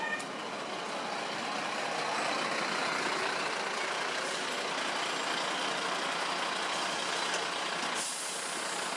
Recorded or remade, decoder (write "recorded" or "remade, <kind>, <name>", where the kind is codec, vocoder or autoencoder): recorded